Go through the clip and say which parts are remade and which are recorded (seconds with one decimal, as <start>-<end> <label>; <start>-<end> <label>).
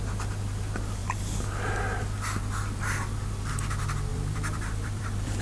0.0-4.1 recorded; 4.1-5.4 remade